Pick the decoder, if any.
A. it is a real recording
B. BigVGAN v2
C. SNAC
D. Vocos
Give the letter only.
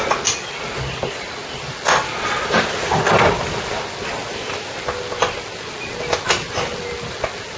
A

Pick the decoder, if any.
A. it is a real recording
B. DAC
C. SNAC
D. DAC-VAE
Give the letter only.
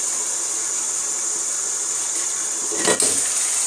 A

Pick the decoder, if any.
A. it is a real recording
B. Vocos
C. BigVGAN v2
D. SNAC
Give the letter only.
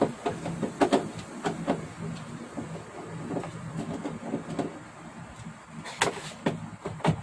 A